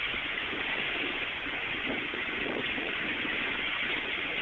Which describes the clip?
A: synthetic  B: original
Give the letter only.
A